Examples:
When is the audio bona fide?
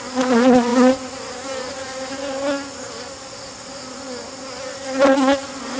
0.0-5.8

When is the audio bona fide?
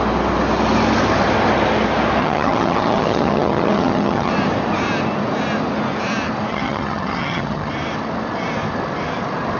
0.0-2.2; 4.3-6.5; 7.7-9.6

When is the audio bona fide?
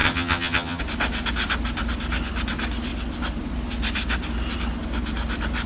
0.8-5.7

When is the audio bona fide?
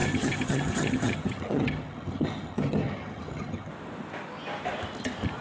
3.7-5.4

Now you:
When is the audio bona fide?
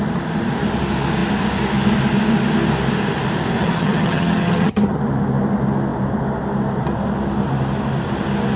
0.0-3.6; 5.0-8.6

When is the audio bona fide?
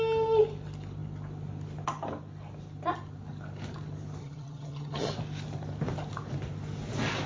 0.0-4.2; 5.1-7.3